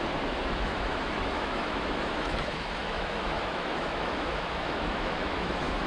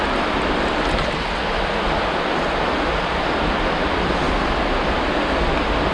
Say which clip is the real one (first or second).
second